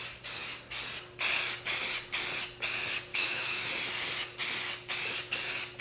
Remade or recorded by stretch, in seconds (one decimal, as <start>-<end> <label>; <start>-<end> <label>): 0.0-3.1 recorded; 3.1-3.7 remade; 3.7-5.8 recorded